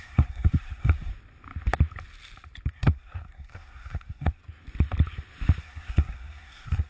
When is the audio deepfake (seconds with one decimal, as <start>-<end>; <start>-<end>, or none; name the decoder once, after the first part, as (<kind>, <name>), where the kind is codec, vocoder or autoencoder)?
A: 0.0-1.1 (codec, SNAC); 2.7-4.4; 5.6-6.9